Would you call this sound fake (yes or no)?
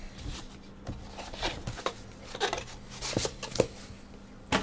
no